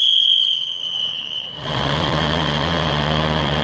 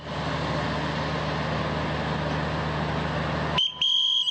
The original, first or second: second